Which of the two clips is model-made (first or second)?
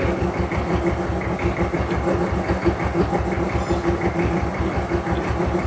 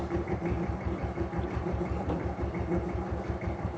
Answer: second